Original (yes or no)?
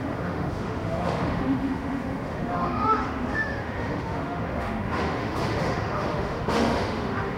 no